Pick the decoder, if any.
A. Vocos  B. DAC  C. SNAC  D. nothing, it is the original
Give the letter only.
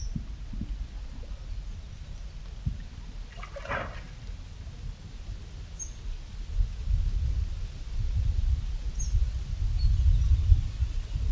D